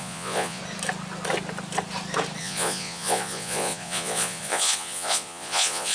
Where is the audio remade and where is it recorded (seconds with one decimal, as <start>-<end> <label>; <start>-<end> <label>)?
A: 0.0-0.6 remade; 0.6-2.4 recorded; 2.4-5.9 remade